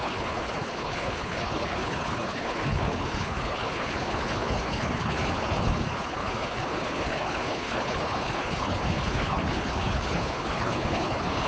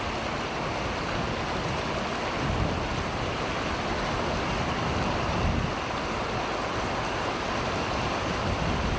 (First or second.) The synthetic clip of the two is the first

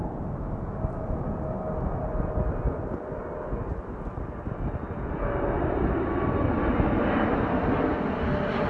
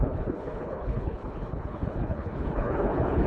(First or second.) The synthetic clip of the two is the second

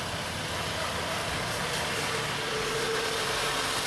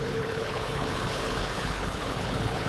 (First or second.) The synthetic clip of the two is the second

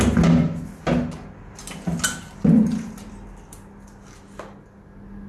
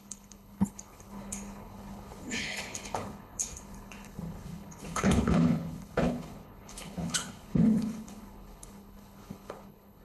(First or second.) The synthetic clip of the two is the second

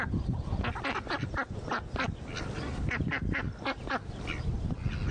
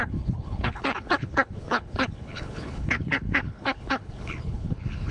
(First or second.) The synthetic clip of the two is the second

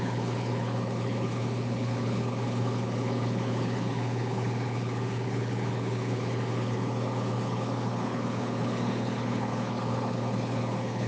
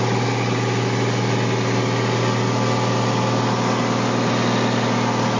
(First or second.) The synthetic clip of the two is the first